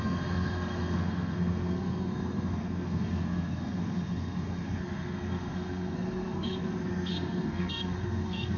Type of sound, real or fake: fake